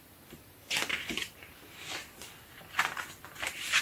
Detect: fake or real real